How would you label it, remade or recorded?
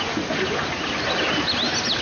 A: recorded